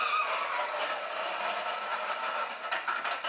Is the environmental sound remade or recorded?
recorded